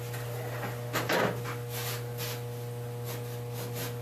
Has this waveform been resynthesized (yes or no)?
no